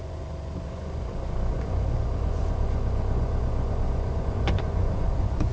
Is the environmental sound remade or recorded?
remade